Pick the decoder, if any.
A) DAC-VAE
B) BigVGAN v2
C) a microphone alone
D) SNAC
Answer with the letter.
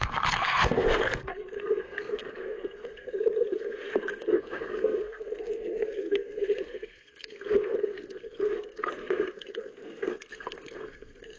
D